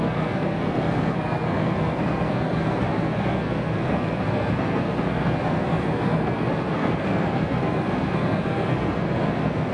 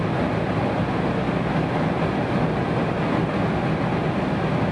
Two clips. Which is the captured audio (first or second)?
second